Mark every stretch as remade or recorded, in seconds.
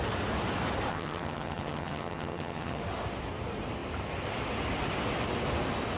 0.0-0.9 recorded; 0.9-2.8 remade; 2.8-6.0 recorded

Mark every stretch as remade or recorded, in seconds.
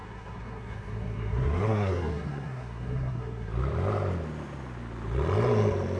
0.0-3.5 remade; 3.5-6.0 recorded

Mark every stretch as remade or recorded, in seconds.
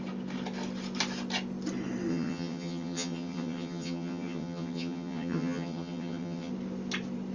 0.0-2.1 recorded; 2.1-6.5 remade; 6.5-7.3 recorded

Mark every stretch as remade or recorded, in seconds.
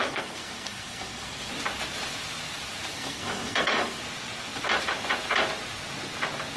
0.0-1.5 remade; 1.5-2.9 recorded; 2.9-4.0 remade; 4.0-6.6 recorded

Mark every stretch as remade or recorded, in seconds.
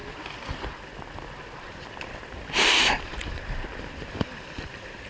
0.0-5.1 recorded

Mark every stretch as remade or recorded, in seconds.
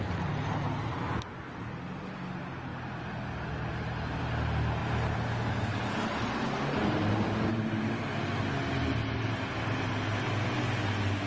0.0-11.3 recorded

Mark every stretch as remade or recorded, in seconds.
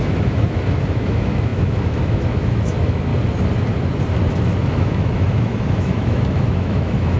0.0-3.1 remade; 3.1-4.3 recorded; 4.3-7.2 remade